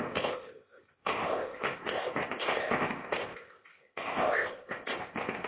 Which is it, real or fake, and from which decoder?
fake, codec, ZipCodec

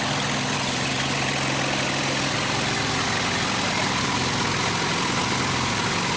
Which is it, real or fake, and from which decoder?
real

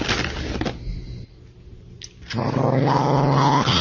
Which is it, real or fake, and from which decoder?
real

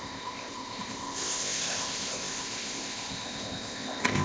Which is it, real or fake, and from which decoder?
fake, codec, ZipCodec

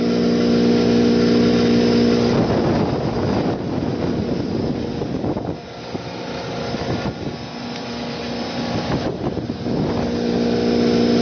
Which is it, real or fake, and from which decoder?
real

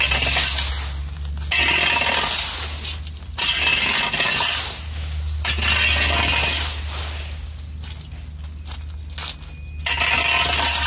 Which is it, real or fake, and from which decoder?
real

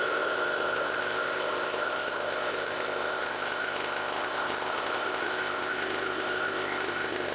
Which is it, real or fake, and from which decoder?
fake, codec, ZipCodec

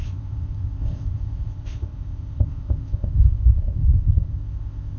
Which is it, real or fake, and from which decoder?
fake, codec, ZipCodec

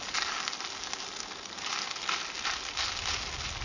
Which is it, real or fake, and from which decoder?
real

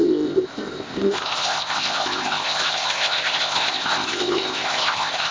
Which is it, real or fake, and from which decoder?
fake, codec, ZipCodec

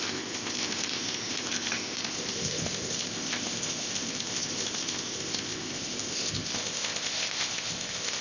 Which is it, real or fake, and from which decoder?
fake, codec, ZipCodec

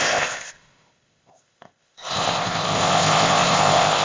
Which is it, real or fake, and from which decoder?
fake, codec, ZipCodec